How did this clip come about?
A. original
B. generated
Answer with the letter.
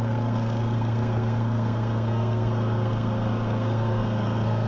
B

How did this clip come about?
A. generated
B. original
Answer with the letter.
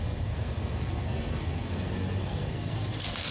A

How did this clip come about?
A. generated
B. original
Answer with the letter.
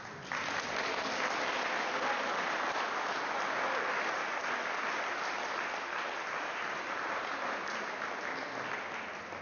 B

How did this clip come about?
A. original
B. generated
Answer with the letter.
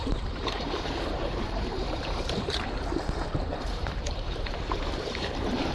B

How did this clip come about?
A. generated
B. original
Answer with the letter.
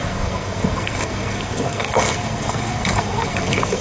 A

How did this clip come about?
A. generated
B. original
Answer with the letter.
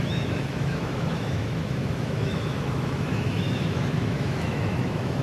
A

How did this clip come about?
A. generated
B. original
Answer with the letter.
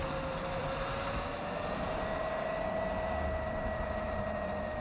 B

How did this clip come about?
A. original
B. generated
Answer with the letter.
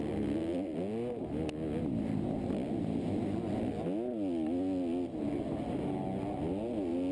A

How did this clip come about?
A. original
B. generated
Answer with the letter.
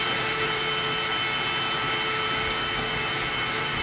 A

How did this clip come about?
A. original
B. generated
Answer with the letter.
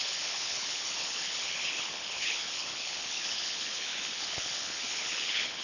B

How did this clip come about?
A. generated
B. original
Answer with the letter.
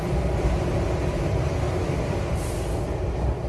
B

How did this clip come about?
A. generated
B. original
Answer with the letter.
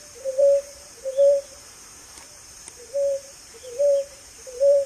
A